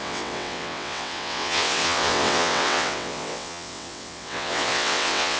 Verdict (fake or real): fake